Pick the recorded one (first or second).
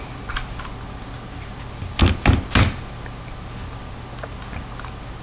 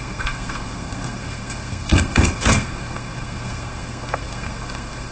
first